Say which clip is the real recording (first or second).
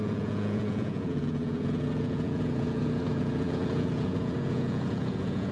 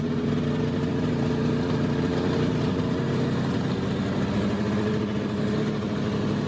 second